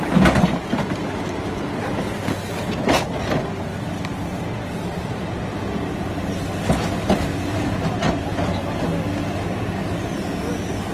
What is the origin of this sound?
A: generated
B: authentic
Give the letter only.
B